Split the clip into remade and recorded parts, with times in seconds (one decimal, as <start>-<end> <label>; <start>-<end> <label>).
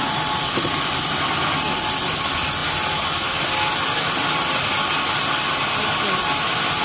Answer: 0.0-6.8 recorded